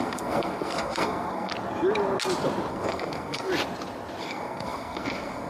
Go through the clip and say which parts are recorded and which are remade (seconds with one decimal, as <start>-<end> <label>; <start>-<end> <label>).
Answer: 0.0-1.5 remade; 1.5-2.7 recorded; 2.7-3.5 remade; 3.5-4.2 recorded; 4.2-5.5 remade